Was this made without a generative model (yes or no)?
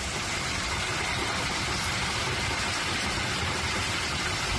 yes